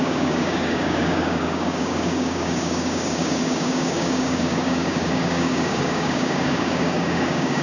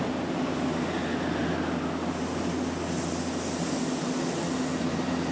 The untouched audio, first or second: second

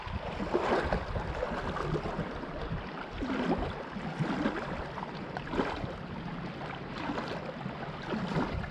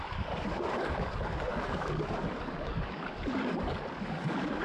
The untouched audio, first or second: first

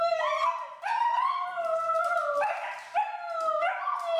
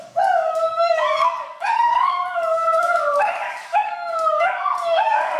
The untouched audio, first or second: first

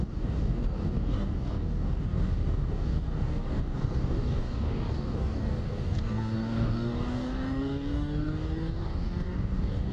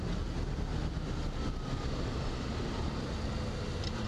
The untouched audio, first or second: second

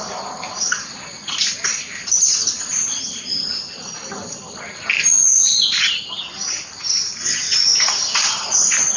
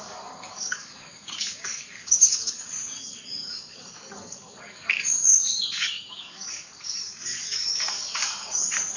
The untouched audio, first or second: first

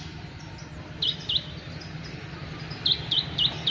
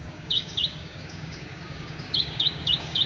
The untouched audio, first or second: first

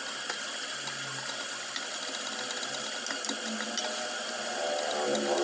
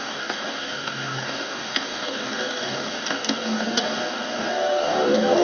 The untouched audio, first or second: first